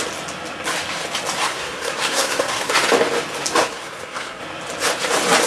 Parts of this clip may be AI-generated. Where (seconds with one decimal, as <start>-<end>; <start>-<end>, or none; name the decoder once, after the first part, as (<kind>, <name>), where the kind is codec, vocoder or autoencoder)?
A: 1.4-2.7 (codec, SNAC); 3.6-4.4